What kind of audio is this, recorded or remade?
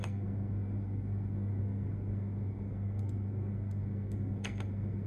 remade